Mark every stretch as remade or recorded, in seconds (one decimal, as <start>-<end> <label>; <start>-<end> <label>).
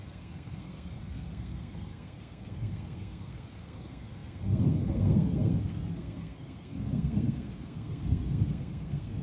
0.0-9.2 remade